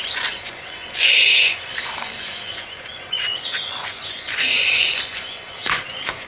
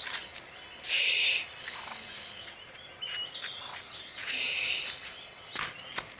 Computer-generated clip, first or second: first